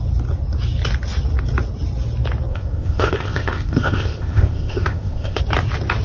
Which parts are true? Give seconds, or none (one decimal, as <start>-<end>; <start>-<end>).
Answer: 0.0-2.5; 5.4-6.0